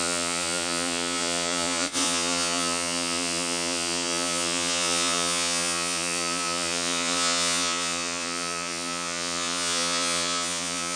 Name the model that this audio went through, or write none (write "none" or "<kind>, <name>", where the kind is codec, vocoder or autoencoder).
vocoder, Vocos